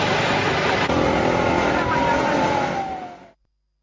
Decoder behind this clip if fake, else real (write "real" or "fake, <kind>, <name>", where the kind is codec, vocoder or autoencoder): real